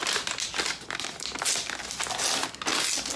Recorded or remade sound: recorded